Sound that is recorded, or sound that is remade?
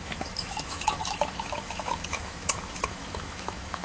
remade